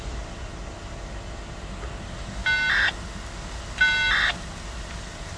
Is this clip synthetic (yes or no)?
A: no